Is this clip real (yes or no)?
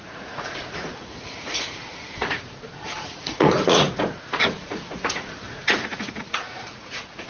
no